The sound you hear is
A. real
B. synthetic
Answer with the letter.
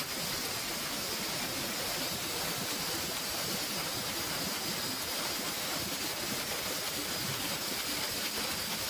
A